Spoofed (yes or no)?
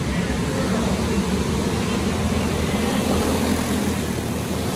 no